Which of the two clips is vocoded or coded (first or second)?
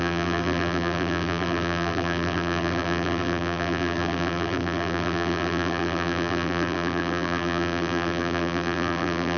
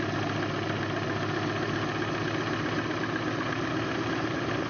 first